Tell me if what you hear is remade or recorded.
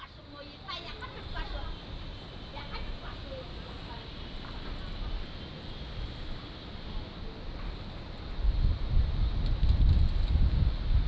recorded